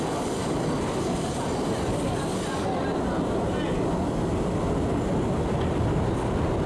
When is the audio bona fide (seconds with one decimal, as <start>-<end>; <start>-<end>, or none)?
0.0-0.4; 3.2-6.7